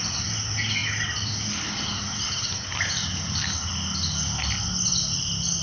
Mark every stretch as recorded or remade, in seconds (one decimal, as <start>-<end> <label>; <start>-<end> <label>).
0.0-5.6 recorded